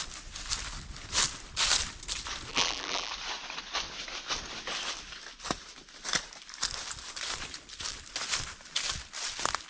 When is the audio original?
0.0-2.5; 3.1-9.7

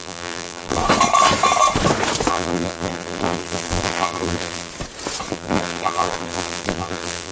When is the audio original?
0.8-2.3; 4.7-5.3

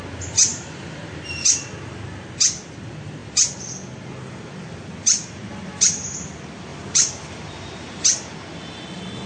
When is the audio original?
0.0-0.5; 1.0-6.7; 8.0-9.3